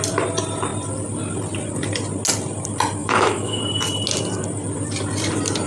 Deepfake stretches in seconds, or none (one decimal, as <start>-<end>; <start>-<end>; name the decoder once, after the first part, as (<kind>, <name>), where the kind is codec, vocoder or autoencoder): 3.0-3.6 (autoencoder, DAC-VAE)